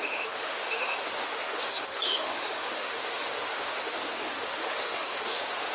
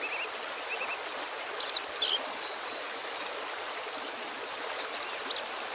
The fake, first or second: first